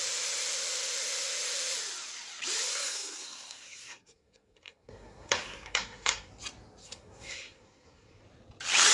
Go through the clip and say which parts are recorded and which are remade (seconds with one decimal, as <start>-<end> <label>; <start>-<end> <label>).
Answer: 0.0-2.7 recorded; 2.7-6.3 remade; 6.3-6.8 recorded; 6.8-8.2 remade; 8.2-8.9 recorded